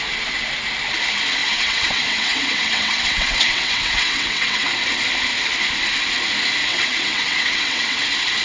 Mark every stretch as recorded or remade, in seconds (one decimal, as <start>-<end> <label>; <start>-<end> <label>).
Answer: 0.0-1.4 recorded; 1.4-4.7 remade; 4.7-6.6 recorded; 6.6-8.0 remade; 8.0-8.4 recorded